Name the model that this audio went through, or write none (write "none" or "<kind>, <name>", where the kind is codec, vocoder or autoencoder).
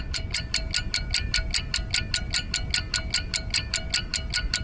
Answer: none